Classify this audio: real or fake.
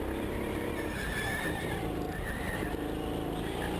real